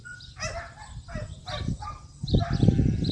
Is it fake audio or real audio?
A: real